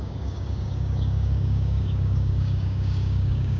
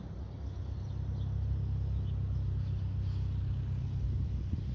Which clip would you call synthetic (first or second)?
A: first